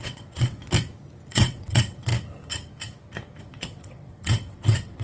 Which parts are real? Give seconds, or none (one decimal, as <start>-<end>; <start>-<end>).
0.6-1.3; 2.1-3.4